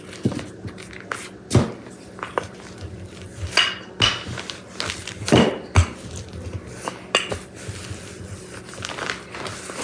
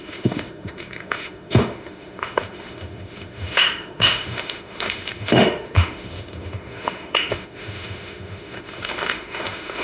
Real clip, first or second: first